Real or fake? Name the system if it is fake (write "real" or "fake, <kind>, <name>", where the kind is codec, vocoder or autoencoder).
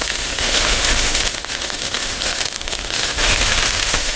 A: fake, autoencoder, DAC-VAE